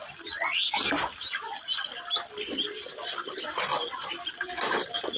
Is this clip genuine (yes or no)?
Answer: yes